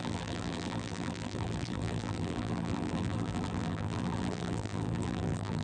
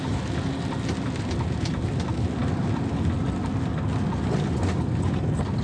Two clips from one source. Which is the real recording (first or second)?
second